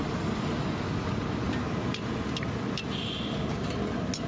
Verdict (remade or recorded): recorded